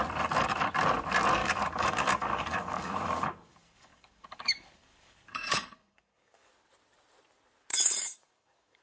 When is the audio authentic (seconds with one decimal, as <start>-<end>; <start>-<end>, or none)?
0.0-1.4; 6.5-7.7